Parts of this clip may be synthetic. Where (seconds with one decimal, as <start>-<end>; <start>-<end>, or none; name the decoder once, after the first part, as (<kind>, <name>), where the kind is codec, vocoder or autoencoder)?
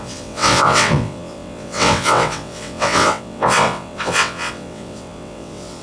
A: 0.0-5.8 (vocoder, WaveNeXt)